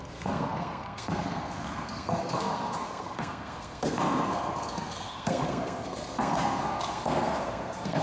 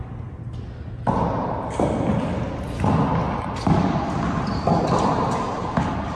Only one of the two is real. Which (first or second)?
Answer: second